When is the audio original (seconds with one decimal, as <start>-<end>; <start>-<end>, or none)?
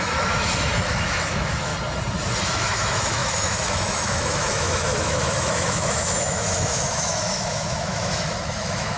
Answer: 1.7-2.4